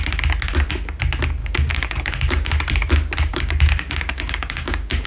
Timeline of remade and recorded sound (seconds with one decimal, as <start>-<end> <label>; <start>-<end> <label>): 0.0-1.4 recorded; 1.4-2.5 remade; 2.5-3.3 recorded; 3.3-5.1 remade